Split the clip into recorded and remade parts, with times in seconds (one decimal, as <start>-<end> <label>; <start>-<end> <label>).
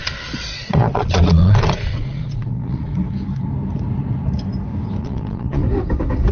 0.0-2.9 remade; 2.9-5.0 recorded; 5.0-5.6 remade; 5.6-6.3 recorded